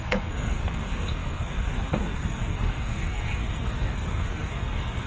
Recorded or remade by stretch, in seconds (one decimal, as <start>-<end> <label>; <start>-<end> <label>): 0.0-5.1 remade

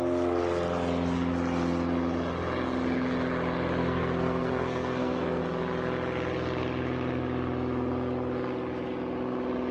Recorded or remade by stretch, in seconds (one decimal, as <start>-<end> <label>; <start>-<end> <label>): 0.0-3.8 recorded; 3.8-5.4 remade; 5.4-9.7 recorded

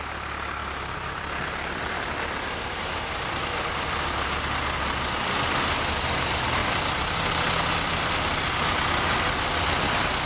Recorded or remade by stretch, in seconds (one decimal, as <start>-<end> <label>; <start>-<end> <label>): 0.0-0.6 recorded; 0.6-4.8 remade; 4.8-6.6 recorded; 6.6-7.6 remade; 7.6-10.3 recorded

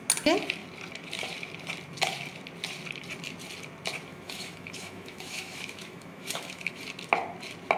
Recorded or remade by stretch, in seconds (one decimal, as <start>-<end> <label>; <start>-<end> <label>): 0.0-4.1 recorded; 4.1-6.8 remade; 6.8-7.8 recorded